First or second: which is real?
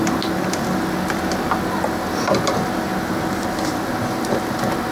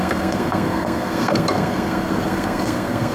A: first